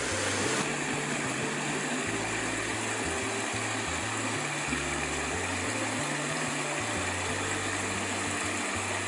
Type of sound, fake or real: real